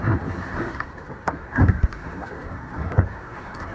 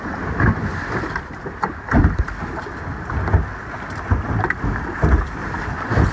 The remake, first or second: first